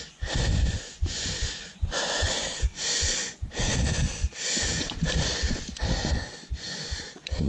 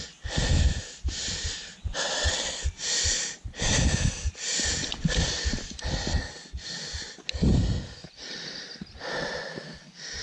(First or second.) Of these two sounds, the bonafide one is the second